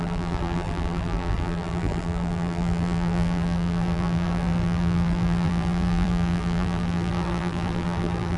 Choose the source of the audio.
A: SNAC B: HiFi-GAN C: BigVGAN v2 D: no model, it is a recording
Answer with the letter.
C